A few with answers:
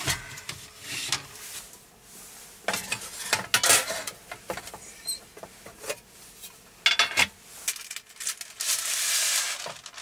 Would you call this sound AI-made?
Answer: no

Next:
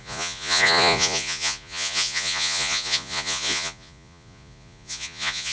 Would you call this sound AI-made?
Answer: yes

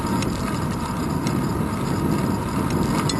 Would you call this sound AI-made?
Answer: no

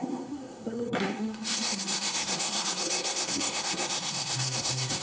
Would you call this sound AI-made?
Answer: yes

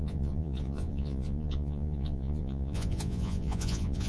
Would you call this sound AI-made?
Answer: yes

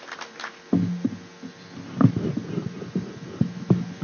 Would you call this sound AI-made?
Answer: no